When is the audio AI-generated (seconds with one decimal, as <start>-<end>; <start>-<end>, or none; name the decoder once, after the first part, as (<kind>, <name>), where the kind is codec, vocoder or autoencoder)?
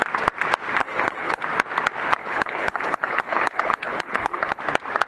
0.8-1.4 (codec, HILCodec); 2.2-4.6